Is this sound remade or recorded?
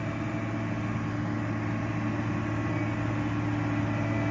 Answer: recorded